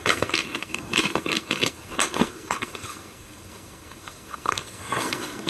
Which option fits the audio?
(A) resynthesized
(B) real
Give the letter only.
A